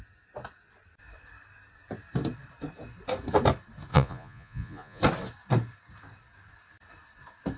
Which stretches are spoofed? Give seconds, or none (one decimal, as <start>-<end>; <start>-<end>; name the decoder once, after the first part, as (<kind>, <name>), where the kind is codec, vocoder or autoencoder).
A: 3.9-5.0 (vocoder, Vocos)

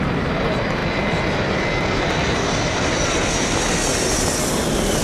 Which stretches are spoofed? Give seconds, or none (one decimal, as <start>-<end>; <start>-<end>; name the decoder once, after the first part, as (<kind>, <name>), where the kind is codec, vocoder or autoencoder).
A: none

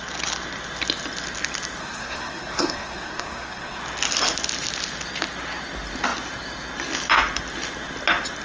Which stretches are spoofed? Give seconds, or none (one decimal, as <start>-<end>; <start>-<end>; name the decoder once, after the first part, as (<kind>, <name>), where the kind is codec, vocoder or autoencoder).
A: 1.8-3.8 (codec, SNAC)

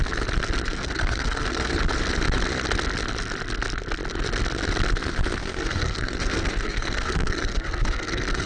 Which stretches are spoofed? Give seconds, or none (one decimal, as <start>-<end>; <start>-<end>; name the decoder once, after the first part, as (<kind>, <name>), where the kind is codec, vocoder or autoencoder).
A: 0.7-1.8 (codec, SNAC); 5.4-8.5

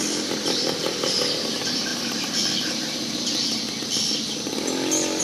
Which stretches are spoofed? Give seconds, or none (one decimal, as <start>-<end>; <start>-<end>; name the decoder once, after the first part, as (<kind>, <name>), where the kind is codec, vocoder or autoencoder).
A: none

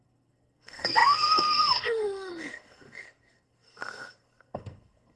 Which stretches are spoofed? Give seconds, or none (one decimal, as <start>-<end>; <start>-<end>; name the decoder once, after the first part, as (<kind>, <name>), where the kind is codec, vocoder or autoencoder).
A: 0.0-5.2 (codec, SNAC)

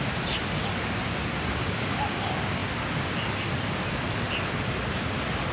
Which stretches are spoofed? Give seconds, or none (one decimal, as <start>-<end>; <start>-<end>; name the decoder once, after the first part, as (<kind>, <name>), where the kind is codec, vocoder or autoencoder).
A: 1.3-2.0 (codec, DAC)